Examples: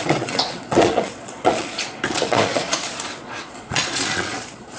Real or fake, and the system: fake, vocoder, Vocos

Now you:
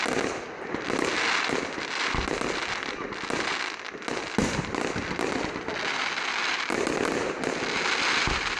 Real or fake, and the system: real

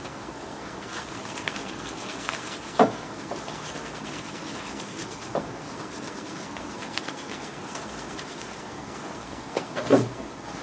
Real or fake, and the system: fake, codec, SNAC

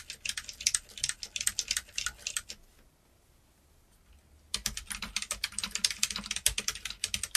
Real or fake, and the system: real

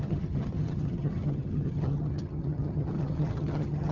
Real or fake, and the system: fake, vocoder, HiFi-GAN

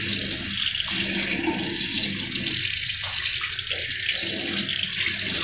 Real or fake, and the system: real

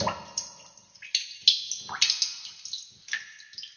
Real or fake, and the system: real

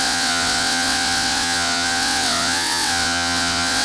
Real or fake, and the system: fake, vocoder, WaveNeXt